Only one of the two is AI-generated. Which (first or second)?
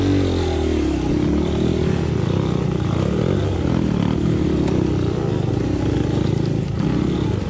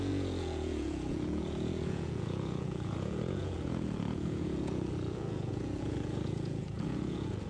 second